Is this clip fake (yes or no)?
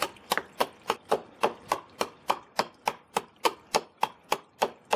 no